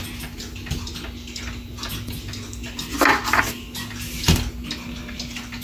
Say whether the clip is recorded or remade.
recorded